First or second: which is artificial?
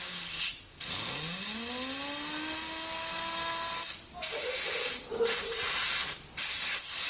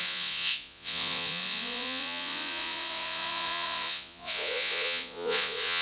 second